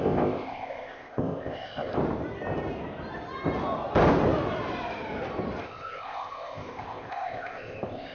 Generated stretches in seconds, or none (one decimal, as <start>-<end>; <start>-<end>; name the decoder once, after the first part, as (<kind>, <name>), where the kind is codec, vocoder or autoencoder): 0.0-2.0 (codec, ZipCodec); 5.6-8.1